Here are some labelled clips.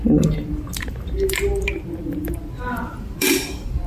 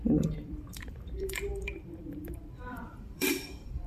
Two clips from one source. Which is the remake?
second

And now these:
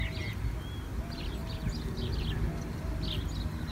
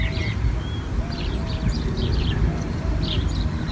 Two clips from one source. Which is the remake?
second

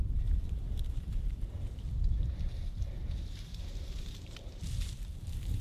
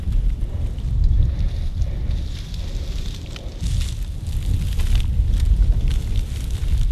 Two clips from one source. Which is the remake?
first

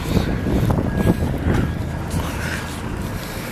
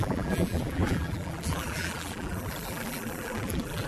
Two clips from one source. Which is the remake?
second